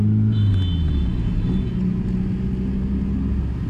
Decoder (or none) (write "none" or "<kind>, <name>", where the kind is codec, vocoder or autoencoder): none